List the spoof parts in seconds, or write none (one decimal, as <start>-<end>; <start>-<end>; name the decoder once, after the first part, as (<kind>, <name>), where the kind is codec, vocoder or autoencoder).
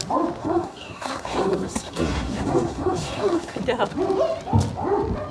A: 0.4-3.6 (codec, SNAC)